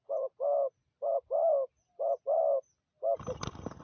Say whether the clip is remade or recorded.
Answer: recorded